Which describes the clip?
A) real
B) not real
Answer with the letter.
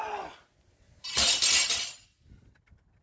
A